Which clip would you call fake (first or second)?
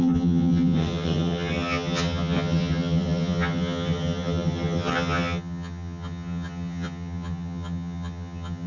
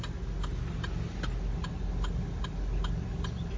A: first